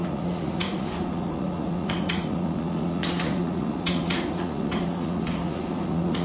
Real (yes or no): no